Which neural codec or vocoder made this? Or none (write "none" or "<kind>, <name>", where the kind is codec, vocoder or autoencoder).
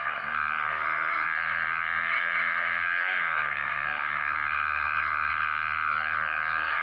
codec, SNAC